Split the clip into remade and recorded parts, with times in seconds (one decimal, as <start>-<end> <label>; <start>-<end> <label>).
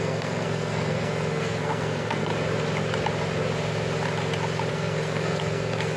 0.0-2.3 remade; 2.3-4.7 recorded; 4.7-6.0 remade